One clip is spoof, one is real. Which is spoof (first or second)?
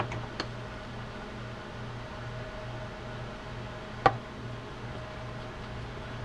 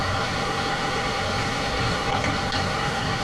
second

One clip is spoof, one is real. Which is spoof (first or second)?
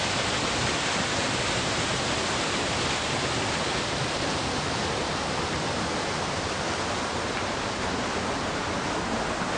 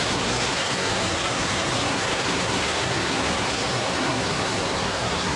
second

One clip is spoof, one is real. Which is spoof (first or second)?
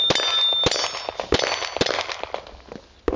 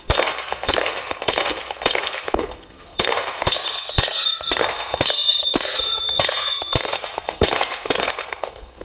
second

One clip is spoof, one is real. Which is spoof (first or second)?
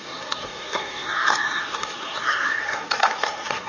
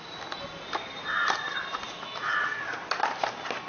first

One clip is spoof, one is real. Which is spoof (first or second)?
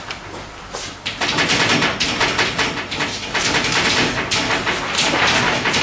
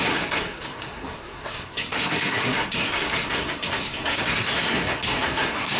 second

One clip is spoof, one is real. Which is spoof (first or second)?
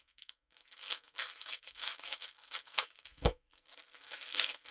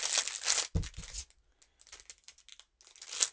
first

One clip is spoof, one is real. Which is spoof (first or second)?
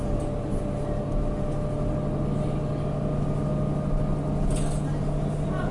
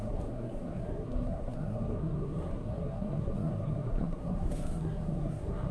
second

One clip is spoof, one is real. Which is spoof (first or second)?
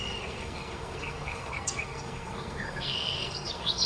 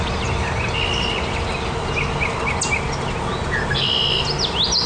first